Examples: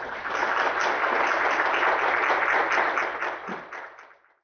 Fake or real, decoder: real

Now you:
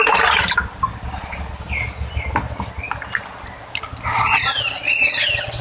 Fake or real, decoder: real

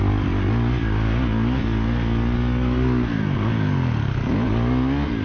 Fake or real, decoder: real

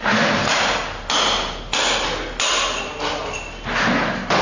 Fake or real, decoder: real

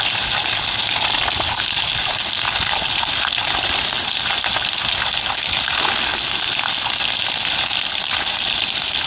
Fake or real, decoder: real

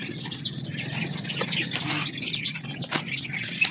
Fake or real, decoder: real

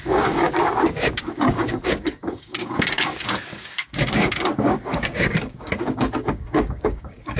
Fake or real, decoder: fake, codec, DAC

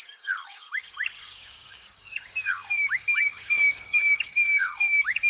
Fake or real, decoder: fake, codec, DAC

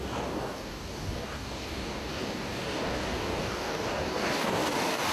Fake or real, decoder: fake, codec, DAC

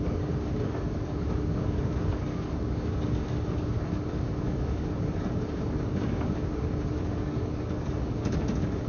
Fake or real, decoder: fake, codec, DAC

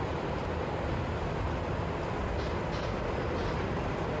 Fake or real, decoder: real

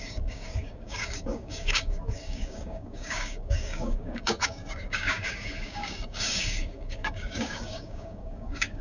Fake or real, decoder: fake, codec, DAC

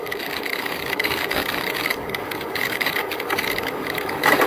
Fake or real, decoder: fake, codec, DAC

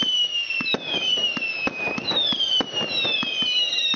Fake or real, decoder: real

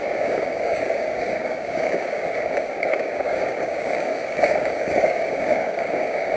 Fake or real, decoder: fake, codec, DAC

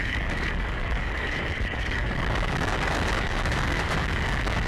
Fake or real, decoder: fake, codec, DAC